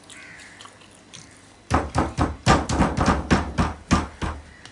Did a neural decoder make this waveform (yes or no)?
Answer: no